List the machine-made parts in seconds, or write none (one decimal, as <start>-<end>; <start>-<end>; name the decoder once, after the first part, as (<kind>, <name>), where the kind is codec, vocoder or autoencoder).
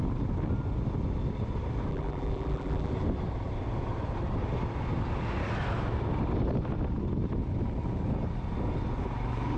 1.9-2.9 (vocoder, BigVGAN v2)